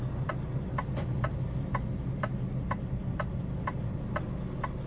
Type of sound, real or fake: real